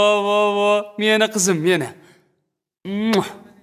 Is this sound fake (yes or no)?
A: no